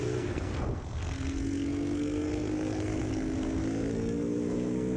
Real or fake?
fake